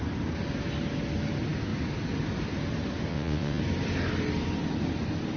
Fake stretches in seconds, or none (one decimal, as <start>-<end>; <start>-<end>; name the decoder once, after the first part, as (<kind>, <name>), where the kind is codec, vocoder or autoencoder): 3.1-3.6 (vocoder, WaveNeXt)